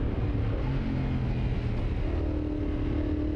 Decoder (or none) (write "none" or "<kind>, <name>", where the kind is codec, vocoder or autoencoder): none